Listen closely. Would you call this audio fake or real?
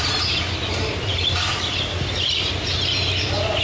real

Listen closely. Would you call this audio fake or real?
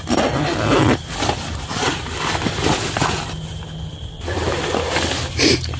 real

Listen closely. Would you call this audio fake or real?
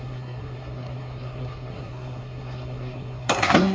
fake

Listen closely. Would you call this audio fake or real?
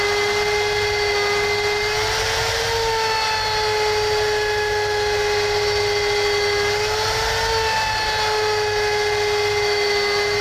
real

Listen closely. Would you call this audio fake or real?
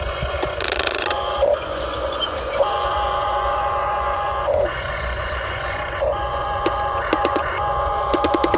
fake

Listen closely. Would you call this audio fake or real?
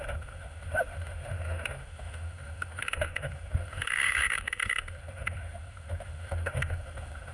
fake